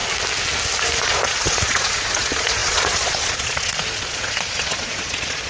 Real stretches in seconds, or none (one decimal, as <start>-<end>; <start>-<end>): 0.0-1.0